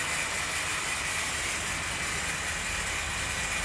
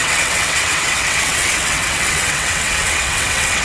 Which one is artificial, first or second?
second